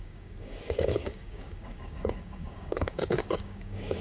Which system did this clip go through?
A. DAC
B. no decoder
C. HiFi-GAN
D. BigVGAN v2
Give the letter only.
A